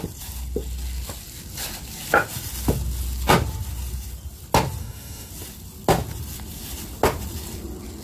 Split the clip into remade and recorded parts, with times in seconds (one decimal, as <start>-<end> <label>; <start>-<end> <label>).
0.0-4.8 recorded; 4.8-5.3 remade; 5.3-8.0 recorded

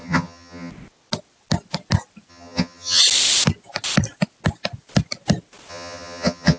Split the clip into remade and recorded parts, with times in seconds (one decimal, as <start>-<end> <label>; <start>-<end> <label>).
0.0-0.7 remade; 0.7-2.3 recorded; 2.3-3.0 remade; 3.0-5.7 recorded; 5.7-6.6 remade

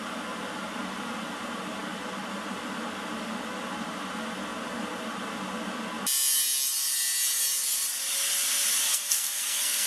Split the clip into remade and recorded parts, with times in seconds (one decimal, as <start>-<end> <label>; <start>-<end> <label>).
0.0-8.9 recorded; 8.9-9.9 remade